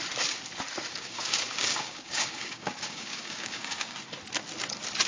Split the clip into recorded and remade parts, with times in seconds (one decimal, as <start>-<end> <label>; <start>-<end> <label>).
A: 0.0-0.9 recorded; 0.9-4.0 remade; 4.0-5.1 recorded